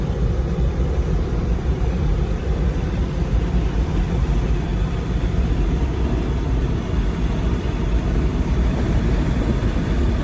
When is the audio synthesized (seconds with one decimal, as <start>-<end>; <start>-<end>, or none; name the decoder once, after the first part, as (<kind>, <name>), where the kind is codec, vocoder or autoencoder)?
0.0-4.7 (vocoder, BigVGAN v2); 5.2-10.2